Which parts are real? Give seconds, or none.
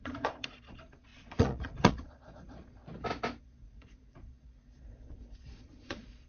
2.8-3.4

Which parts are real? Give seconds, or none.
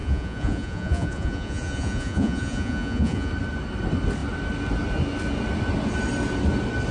3.3-6.9